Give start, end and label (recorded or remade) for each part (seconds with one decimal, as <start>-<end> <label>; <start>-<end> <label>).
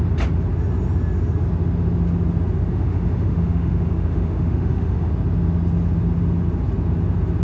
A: 0.0-2.7 recorded; 2.7-5.1 remade; 5.1-7.4 recorded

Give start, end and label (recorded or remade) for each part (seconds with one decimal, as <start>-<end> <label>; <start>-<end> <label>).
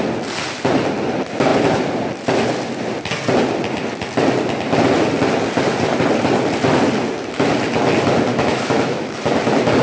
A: 0.0-8.3 recorded; 8.3-9.2 remade; 9.2-9.8 recorded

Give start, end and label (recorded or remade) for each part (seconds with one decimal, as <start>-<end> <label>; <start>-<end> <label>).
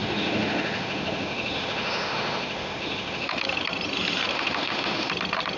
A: 0.0-3.4 remade; 3.4-4.3 recorded; 4.3-5.1 remade; 5.1-5.6 recorded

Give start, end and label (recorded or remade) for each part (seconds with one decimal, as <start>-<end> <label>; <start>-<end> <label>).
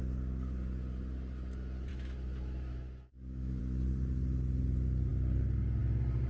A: 0.0-1.9 recorded; 1.9-3.6 remade; 3.6-6.3 recorded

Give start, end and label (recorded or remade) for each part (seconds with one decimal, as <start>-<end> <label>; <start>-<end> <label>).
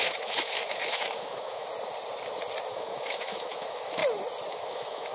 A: 0.0-1.7 remade; 1.7-2.7 recorded; 2.7-4.0 remade; 4.0-4.5 recorded; 4.5-5.1 remade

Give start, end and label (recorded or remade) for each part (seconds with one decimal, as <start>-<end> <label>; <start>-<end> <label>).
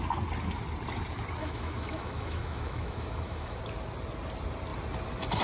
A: 0.0-1.4 recorded; 1.4-3.6 remade; 3.6-5.4 recorded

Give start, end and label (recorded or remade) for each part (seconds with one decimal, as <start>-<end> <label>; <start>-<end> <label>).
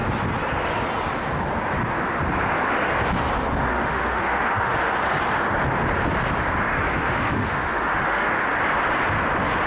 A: 0.0-3.7 recorded; 3.7-4.9 remade; 4.9-6.9 recorded; 6.9-8.3 remade; 8.3-9.7 recorded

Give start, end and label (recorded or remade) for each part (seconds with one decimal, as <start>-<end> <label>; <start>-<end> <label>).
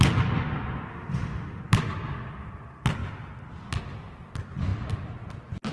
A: 0.0-0.9 recorded; 0.9-1.6 remade; 1.6-5.7 recorded